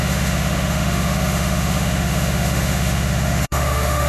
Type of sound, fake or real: fake